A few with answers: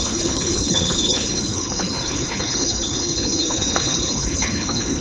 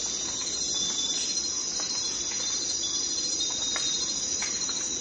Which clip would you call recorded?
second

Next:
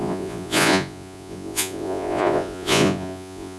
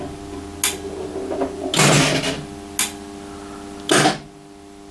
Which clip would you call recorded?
second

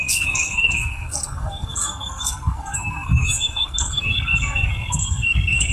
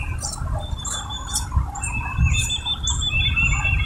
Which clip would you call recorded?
second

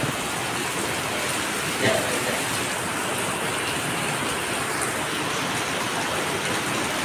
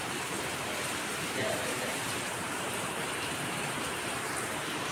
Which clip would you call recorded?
first